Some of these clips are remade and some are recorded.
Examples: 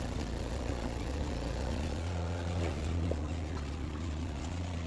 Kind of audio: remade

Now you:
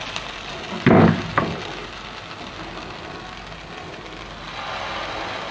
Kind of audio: recorded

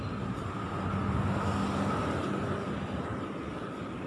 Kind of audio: recorded